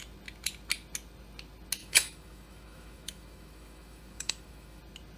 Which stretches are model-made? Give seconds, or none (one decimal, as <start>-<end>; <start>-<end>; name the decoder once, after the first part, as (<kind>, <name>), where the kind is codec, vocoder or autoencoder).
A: 1.8-4.8 (autoencoder, DAC-VAE)